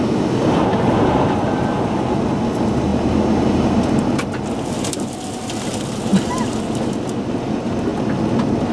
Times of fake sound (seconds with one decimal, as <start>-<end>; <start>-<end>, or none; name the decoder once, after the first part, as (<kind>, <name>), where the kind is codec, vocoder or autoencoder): none